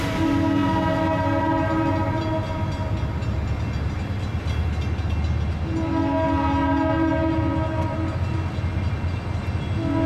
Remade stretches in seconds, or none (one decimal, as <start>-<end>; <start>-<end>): none